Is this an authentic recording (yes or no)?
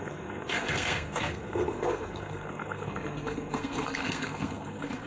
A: no